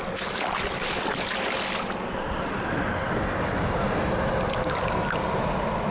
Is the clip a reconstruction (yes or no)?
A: no